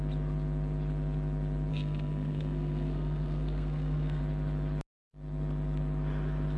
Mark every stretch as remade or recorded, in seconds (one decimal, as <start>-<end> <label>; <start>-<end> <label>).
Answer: 0.0-1.7 recorded; 1.7-4.2 remade; 4.2-6.6 recorded